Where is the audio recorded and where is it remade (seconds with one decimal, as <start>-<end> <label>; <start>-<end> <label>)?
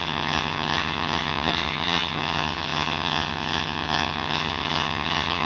0.0-5.4 remade